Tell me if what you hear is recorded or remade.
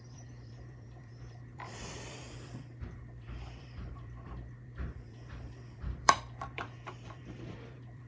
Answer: remade